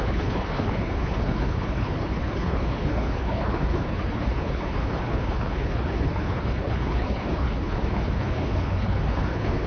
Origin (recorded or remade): remade